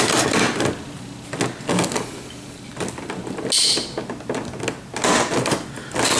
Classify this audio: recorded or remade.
recorded